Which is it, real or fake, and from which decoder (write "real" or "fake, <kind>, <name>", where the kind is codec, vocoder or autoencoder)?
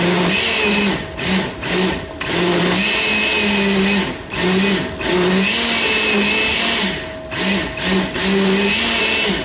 real